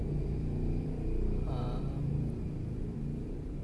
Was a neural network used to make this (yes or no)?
yes